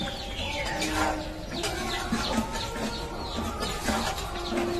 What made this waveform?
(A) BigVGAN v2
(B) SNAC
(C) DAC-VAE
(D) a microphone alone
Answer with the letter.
D